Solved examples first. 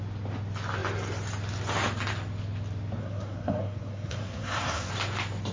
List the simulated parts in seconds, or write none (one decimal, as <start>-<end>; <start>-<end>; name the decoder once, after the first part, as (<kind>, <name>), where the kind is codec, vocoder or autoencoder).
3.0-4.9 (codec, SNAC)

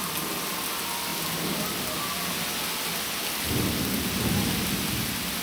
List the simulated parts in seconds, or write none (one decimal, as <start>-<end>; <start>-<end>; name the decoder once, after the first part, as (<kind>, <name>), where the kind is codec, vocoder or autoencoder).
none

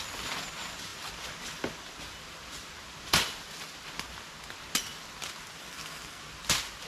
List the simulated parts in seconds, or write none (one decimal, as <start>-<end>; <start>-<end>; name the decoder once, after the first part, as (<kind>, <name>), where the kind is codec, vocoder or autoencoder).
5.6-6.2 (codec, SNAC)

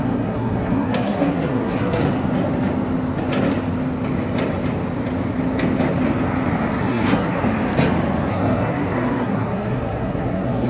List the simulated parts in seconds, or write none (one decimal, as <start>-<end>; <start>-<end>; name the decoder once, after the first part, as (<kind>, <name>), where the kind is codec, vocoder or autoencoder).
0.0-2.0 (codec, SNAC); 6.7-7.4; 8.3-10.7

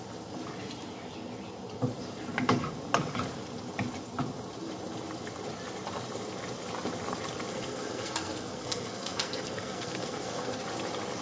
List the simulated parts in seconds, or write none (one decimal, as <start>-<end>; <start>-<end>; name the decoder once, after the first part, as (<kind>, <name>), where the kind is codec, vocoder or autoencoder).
7.5-10.6 (codec, SNAC)

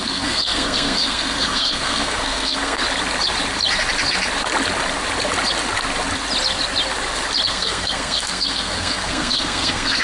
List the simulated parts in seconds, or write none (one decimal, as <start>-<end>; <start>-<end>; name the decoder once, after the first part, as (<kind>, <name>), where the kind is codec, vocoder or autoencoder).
0.0-2.8 (codec, SNAC); 7.5-10.0

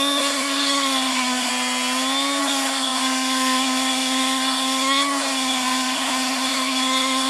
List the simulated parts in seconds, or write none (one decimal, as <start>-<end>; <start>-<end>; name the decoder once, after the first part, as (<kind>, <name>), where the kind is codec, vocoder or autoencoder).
0.0-1.5 (codec, SNAC); 2.4-7.3

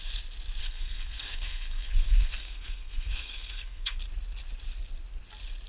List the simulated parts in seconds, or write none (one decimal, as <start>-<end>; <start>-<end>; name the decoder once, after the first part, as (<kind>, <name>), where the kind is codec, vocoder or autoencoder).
0.6-4.0 (codec, SNAC)